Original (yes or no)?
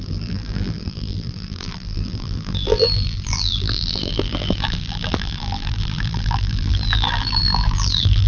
no